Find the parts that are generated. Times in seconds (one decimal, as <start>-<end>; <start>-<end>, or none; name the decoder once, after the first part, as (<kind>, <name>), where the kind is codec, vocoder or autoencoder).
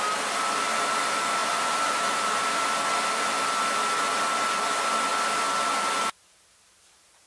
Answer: 1.4-2.6 (vocoder, BigVGAN v2)